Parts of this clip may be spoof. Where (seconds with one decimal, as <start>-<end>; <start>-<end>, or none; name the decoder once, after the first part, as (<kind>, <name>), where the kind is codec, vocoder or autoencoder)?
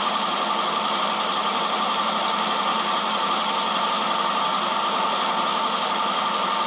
1.4-2.1 (vocoder, BigVGAN v2); 2.7-4.8